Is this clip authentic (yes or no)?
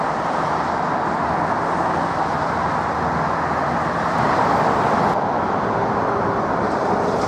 yes